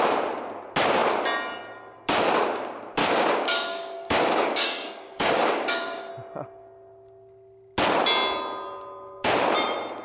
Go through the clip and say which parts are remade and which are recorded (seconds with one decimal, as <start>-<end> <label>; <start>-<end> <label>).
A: 0.0-3.0 recorded; 3.0-6.1 remade; 6.1-10.0 recorded